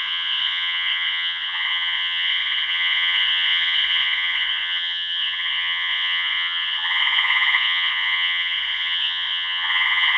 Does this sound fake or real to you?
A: fake